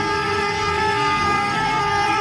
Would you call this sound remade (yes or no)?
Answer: yes